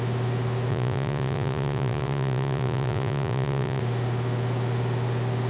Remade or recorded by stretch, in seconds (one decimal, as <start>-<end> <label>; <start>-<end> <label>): 0.0-0.7 recorded; 0.7-3.8 remade; 3.8-5.5 recorded